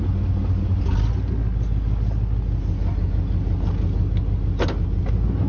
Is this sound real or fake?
real